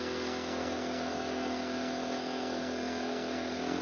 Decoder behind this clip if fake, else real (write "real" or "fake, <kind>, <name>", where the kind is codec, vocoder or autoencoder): fake, codec, SNAC